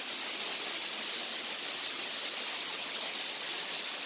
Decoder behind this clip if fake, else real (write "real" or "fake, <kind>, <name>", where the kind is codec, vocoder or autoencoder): real